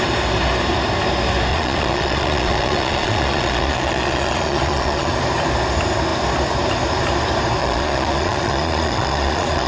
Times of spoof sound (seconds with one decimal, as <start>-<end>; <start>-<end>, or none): 1.5-5.1; 7.6-9.7